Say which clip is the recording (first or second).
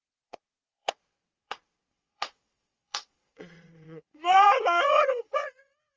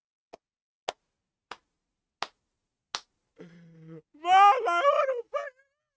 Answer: second